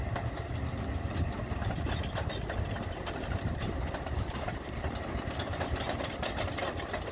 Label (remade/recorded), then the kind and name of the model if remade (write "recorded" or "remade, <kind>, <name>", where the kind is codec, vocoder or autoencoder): recorded